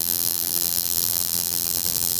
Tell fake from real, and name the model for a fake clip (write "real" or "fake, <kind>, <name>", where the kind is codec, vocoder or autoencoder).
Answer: fake, vocoder, BigVGAN v2